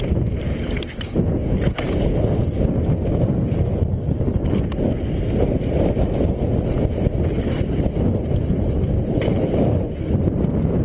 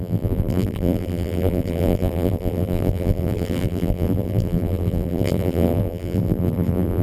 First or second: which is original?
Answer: first